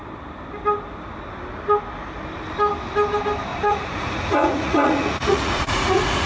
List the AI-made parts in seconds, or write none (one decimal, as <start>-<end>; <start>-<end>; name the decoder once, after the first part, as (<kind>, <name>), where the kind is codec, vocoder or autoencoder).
3.5-6.3 (vocoder, Vocos)